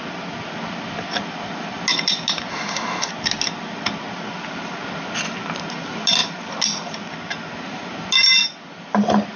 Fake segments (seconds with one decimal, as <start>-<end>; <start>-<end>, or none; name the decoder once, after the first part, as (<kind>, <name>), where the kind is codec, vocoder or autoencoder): 2.5-3.1 (autoencoder, DAC-VAE)